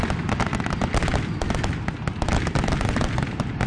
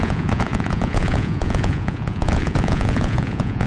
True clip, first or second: first